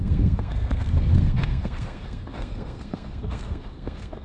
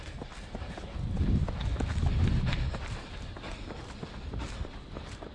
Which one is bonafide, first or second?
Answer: second